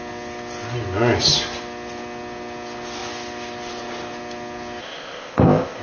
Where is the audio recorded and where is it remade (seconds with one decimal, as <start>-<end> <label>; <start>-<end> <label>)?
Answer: 0.0-4.8 recorded; 4.8-5.8 remade